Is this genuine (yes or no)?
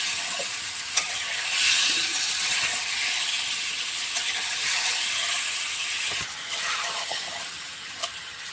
no